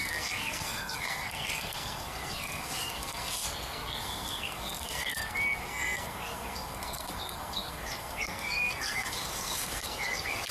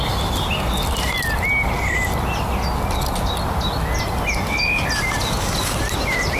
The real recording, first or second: second